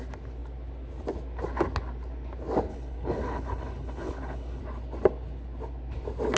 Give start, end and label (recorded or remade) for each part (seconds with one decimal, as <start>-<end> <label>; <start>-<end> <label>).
0.0-2.7 recorded; 2.7-4.6 remade; 4.6-6.4 recorded